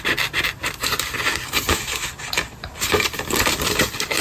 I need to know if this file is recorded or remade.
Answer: recorded